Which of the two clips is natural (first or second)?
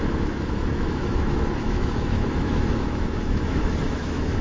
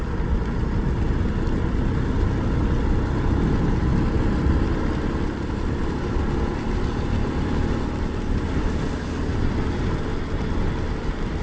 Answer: second